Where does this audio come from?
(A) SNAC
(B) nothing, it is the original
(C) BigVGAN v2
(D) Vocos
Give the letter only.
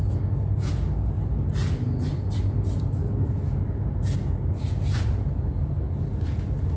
B